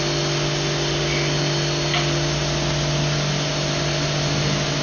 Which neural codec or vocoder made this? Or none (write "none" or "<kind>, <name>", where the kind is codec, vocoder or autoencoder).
none